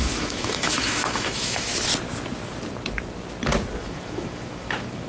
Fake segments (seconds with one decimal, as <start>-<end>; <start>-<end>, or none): 0.0-1.7; 3.8-5.1